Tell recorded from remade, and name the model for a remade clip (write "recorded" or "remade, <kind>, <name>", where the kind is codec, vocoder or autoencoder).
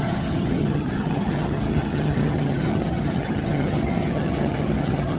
remade, vocoder, HiFi-GAN